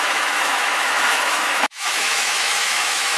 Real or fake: fake